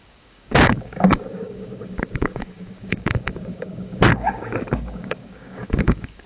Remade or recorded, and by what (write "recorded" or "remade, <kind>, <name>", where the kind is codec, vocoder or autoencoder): remade, codec, DAC